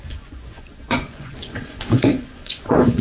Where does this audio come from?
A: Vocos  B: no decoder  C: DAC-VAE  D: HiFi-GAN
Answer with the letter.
A